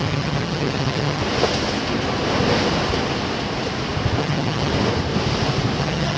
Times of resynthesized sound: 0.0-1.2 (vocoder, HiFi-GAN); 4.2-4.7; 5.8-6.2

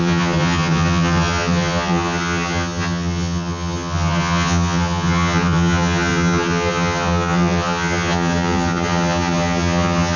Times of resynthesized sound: 0.0-10.2 (vocoder, HiFi-GAN)

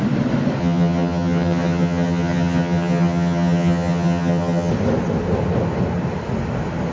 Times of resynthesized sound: 0.6-4.7 (vocoder, HiFi-GAN)